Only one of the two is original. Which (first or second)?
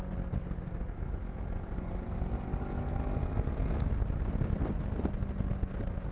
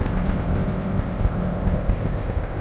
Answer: first